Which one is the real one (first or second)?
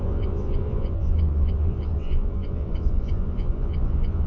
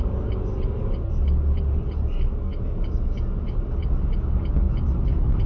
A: second